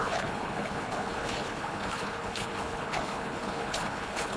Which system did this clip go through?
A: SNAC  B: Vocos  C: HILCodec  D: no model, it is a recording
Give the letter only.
C